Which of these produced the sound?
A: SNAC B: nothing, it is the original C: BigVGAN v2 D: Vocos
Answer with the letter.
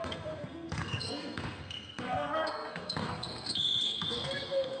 A